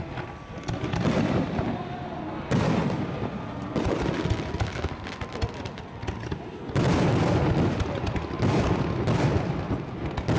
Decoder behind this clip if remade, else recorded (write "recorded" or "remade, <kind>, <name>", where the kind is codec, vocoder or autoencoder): recorded